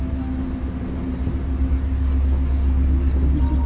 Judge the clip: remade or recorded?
recorded